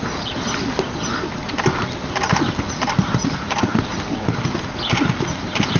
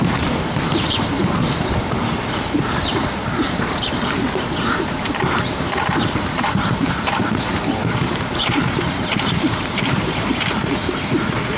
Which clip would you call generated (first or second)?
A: second